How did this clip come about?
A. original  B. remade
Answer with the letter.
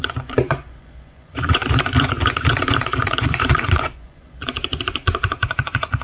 B